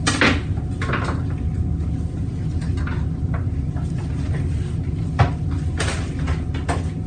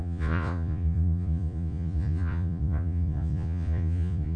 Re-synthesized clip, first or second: second